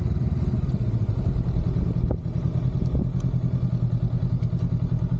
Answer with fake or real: real